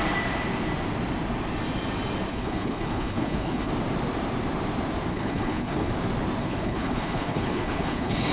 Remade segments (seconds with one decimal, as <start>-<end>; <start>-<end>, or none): 2.3-3.7; 5.1-5.9; 6.4-8.3

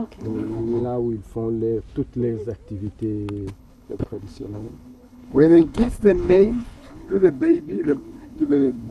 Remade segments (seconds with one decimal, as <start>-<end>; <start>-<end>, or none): 0.0-0.8; 3.5-8.9

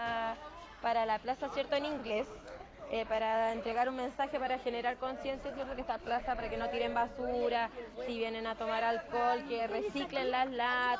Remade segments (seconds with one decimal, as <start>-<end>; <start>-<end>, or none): 2.0-3.9; 5.5-6.4